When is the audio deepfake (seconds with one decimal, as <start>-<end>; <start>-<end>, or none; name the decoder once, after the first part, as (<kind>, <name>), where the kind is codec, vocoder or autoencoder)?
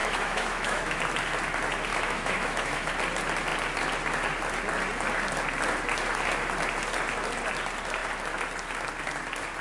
0.0-1.0 (autoencoder, DAC-VAE); 1.9-2.9